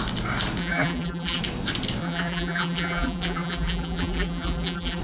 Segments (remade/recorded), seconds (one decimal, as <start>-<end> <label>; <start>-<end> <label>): 0.0-0.6 recorded; 0.6-1.4 remade; 1.4-2.0 recorded; 2.0-5.0 remade